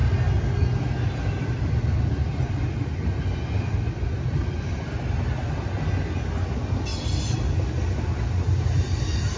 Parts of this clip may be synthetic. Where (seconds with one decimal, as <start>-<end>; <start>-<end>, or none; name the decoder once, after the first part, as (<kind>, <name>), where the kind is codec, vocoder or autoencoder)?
none